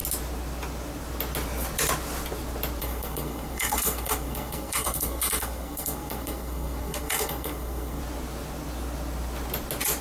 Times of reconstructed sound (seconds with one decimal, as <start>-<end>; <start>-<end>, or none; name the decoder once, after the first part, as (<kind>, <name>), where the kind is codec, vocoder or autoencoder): 2.8-8.0 (codec, SNAC)